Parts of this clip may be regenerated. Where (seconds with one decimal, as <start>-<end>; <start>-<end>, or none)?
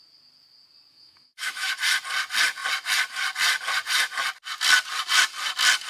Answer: 0.9-1.7